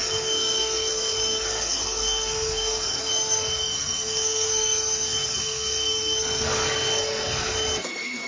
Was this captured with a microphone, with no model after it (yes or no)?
no